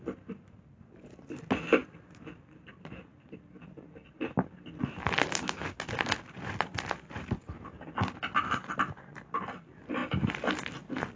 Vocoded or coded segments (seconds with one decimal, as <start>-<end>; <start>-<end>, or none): none